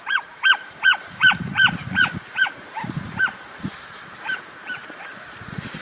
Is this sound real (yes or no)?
no